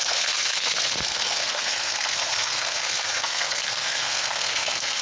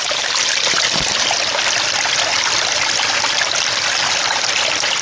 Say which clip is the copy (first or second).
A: first